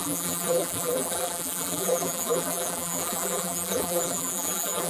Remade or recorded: remade